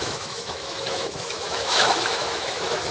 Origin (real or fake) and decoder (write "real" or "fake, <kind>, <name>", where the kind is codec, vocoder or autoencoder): fake, autoencoder, DAC-VAE